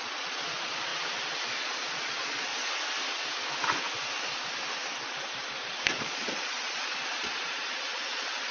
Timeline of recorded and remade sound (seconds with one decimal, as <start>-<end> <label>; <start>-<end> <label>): 0.0-0.9 remade; 0.9-1.6 recorded; 1.6-2.5 remade; 2.5-5.9 recorded; 5.9-8.5 remade